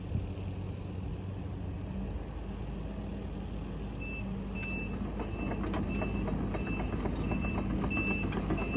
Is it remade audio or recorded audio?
recorded